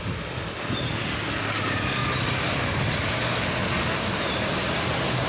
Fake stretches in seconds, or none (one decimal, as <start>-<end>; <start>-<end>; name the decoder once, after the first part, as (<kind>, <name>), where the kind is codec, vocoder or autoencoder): 4.6-5.3 (vocoder, BigVGAN v2)